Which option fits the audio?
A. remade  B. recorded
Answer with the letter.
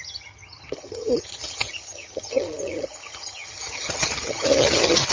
A